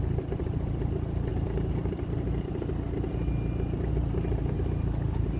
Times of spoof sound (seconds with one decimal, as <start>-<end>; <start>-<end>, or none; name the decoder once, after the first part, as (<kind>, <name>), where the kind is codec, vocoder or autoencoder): 0.0-1.3 (vocoder, BigVGAN v2); 3.9-5.4